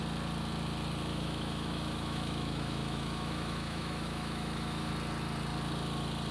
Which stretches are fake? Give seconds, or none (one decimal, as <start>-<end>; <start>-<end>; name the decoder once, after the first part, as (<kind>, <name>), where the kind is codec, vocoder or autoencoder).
1.1-4.9 (autoencoder, DAC-VAE)